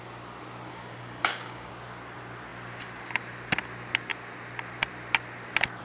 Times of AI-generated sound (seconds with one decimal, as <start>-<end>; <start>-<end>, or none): 0.7-1.7